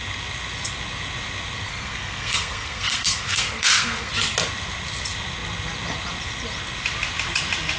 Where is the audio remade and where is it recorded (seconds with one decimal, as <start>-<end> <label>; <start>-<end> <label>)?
0.0-1.7 recorded; 1.7-4.1 remade; 4.1-7.8 recorded